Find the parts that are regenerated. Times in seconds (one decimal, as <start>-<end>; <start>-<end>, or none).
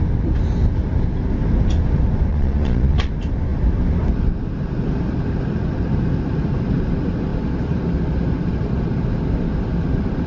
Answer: 2.3-3.1